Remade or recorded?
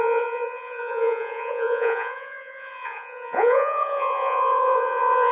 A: remade